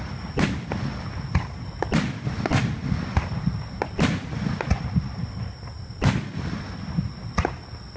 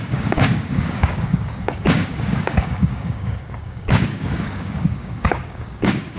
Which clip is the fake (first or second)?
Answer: second